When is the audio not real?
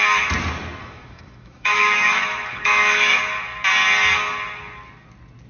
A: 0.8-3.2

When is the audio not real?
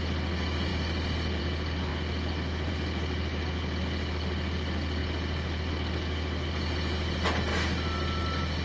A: none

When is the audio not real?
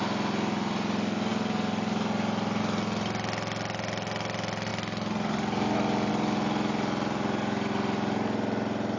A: none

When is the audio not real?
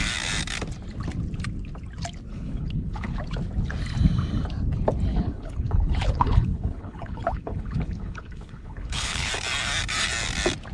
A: 2.3-3.2; 5.1-9.3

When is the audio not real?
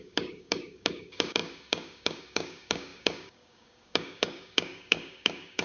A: 0.0-5.6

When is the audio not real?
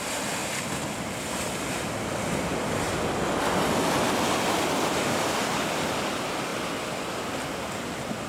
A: none